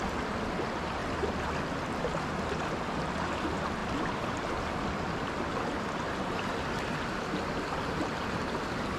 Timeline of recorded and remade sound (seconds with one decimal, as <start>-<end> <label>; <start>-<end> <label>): 0.0-9.0 recorded

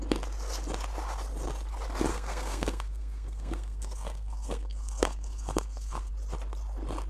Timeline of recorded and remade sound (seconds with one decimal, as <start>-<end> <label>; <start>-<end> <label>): 0.0-2.1 recorded; 2.1-6.1 remade; 6.1-7.1 recorded

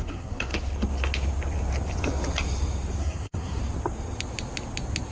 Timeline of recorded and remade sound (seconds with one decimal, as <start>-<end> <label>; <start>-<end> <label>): 0.0-0.5 remade; 0.5-3.0 recorded; 3.0-3.6 remade; 3.6-5.1 recorded

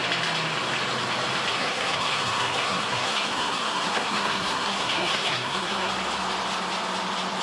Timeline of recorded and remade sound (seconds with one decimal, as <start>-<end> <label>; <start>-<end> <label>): 0.0-1.5 recorded; 1.5-5.9 remade; 5.9-7.4 recorded